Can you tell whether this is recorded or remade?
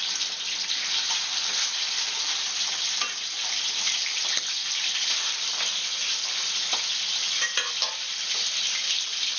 recorded